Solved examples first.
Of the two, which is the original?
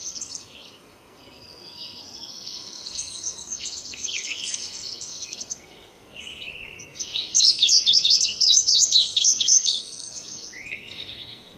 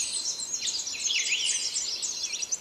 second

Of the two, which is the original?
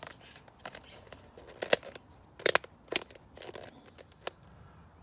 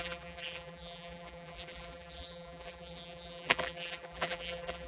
first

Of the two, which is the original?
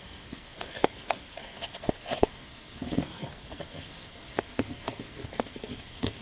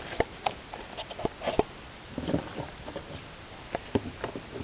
second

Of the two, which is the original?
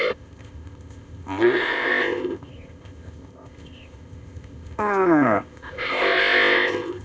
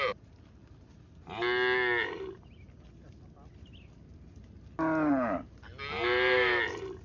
second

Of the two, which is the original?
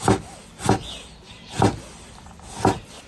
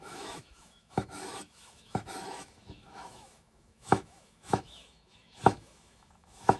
first